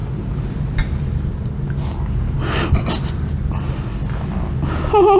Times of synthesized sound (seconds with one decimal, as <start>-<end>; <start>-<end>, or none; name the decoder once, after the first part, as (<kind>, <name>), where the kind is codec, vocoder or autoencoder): none

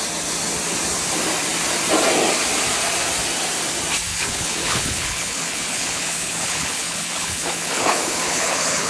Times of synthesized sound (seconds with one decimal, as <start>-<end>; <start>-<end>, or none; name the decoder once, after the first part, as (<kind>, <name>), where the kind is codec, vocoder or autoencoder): 4.1-8.9 (codec, HILCodec)

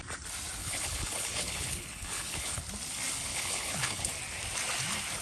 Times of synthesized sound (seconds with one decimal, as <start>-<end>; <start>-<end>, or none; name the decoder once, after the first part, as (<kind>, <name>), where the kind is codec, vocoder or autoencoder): 0.6-2.6 (codec, HILCodec); 3.3-4.1

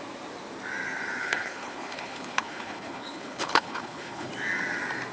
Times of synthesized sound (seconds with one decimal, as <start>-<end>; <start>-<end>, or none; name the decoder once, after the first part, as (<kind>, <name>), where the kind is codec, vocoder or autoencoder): 1.2-4.3 (codec, HILCodec)

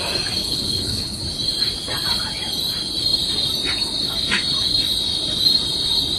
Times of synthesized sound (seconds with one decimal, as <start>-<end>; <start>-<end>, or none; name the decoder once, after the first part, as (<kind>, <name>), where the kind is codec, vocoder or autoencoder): 0.4-1.2 (codec, HILCodec)

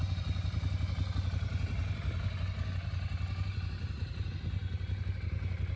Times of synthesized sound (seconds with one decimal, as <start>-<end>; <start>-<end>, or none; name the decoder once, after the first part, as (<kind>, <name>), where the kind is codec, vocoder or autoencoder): none

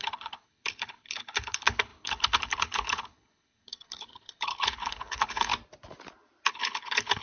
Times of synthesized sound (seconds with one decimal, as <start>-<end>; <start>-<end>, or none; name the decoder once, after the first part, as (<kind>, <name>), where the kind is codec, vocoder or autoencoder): 0.0-5.5 (codec, HILCodec); 6.5-7.2